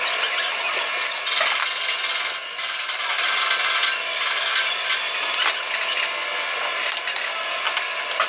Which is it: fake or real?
real